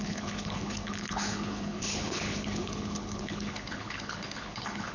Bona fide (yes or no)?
no